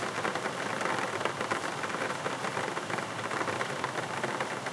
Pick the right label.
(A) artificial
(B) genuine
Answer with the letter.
B